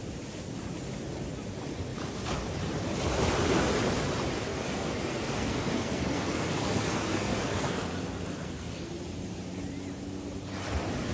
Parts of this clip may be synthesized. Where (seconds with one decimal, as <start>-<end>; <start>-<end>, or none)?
4.5-8.9